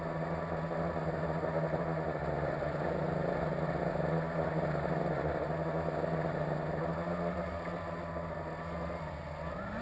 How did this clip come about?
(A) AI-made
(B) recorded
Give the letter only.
B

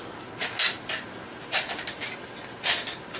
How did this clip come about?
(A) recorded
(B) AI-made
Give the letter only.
A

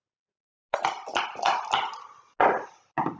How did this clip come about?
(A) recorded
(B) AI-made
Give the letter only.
A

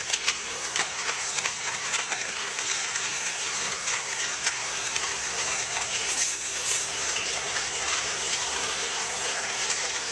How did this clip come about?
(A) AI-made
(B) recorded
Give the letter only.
A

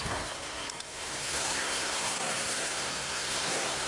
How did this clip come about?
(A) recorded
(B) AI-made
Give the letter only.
B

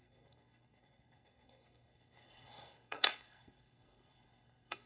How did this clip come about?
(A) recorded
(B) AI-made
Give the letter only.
B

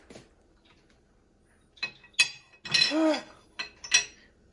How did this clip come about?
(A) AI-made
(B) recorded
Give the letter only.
B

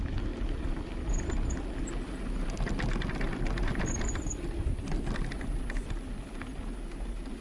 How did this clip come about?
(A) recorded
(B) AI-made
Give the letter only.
A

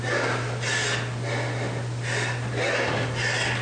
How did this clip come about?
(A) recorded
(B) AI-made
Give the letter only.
A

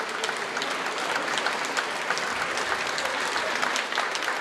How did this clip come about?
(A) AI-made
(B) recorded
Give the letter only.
B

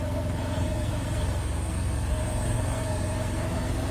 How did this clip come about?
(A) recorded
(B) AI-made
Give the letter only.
B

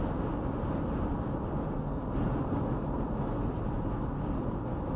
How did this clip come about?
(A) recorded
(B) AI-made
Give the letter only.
A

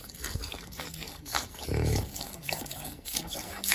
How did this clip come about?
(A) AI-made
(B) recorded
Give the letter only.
A